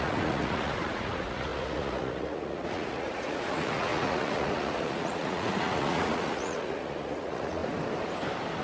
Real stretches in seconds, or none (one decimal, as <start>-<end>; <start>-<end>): 7.6-8.6